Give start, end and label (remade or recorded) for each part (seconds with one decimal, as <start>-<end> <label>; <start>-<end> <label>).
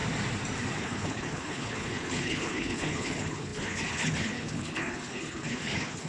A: 0.0-0.8 recorded; 0.8-6.1 remade